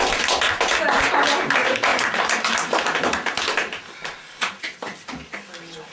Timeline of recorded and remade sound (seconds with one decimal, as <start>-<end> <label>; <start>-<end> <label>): 0.0-1.9 recorded; 1.9-2.5 remade; 2.5-4.0 recorded; 4.0-5.4 remade; 5.4-5.9 recorded